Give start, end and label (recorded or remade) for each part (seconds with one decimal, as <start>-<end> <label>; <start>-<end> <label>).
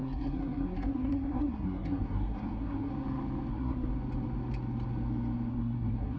0.0-2.9 remade; 2.9-3.5 recorded; 3.5-3.9 remade; 3.9-5.5 recorded; 5.5-6.2 remade